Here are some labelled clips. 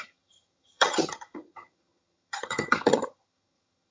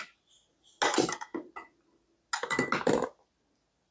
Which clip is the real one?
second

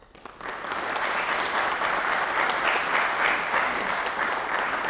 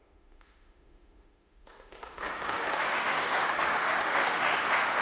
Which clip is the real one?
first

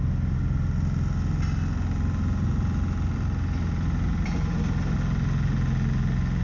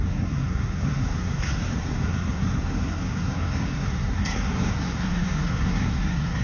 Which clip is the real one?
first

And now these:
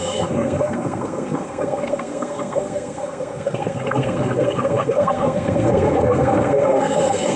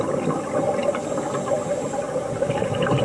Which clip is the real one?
second